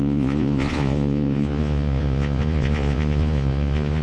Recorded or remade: remade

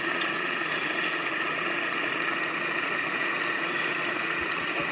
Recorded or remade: remade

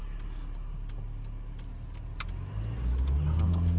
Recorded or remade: recorded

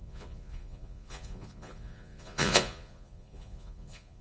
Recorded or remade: remade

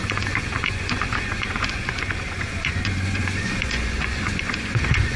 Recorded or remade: remade